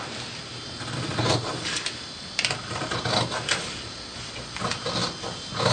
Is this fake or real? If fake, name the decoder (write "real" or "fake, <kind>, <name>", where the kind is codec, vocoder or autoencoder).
real